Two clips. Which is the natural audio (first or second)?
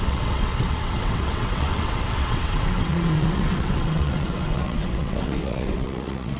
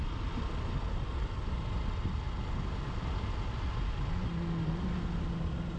second